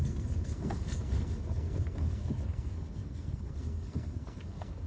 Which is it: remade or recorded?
remade